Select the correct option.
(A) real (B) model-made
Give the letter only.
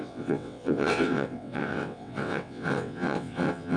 B